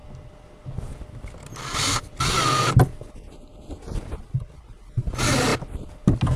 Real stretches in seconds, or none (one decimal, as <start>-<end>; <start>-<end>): 0.0-6.4